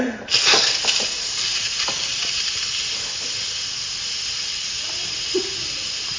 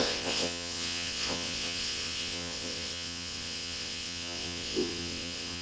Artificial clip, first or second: second